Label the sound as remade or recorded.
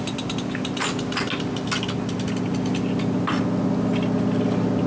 recorded